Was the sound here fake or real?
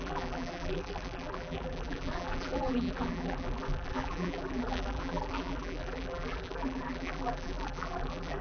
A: fake